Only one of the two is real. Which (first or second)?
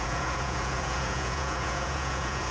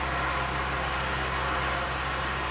second